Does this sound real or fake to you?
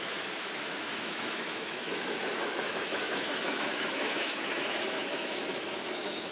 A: fake